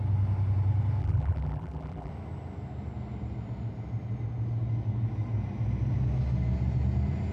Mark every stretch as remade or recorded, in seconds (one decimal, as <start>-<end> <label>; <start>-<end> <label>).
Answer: 0.0-1.0 recorded; 1.0-2.1 remade; 2.1-7.3 recorded